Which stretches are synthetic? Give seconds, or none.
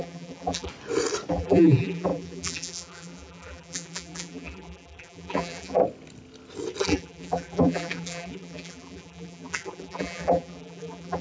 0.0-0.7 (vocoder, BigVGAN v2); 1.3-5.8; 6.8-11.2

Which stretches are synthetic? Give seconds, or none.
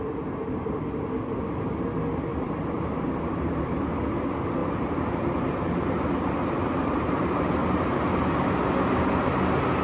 2.3-4.0 (vocoder, BigVGAN v2); 4.6-8.5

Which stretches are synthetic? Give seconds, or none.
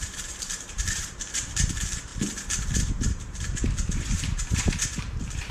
0.0-2.1 (vocoder, BigVGAN v2); 2.8-5.5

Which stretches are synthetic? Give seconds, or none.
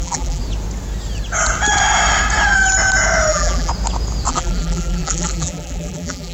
0.0-0.4 (vocoder, BigVGAN v2); 3.3-3.7; 4.3-6.3